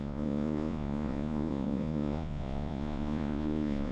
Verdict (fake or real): fake